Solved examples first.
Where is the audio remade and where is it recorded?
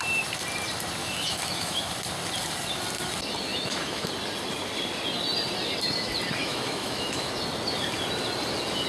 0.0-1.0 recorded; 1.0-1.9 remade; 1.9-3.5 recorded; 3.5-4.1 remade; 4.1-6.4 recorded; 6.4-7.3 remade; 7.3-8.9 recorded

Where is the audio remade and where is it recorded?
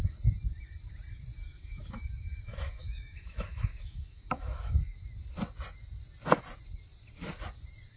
0.0-1.5 recorded; 1.5-4.7 remade; 4.7-8.0 recorded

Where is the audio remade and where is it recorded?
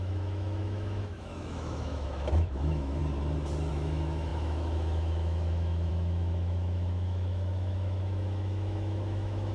0.0-3.0 remade; 3.0-3.7 recorded; 3.7-9.5 remade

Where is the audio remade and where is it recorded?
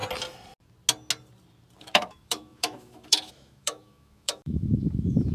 0.0-1.8 recorded; 1.8-5.3 remade